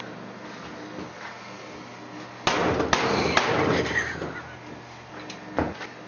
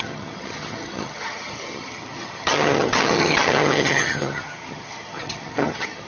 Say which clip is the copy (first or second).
second